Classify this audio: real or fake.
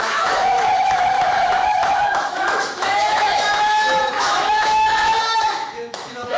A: fake